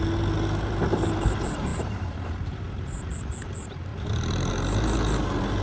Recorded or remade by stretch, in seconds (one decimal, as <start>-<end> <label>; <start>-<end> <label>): 0.0-1.7 recorded; 1.7-2.5 remade; 2.5-3.9 recorded; 3.9-4.5 remade; 4.5-5.6 recorded